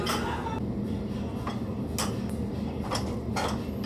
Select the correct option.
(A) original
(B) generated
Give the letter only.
A